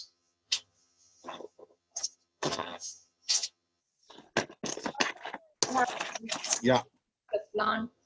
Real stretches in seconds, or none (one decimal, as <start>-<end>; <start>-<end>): 3.8-7.6